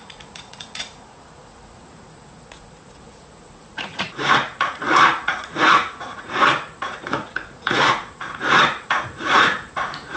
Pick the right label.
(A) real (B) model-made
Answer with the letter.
B